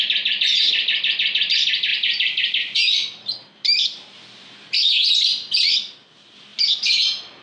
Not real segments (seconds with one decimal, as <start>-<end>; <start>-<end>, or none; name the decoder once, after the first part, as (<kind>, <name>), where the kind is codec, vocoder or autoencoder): 1.9-2.9 (vocoder, BigVGAN v2)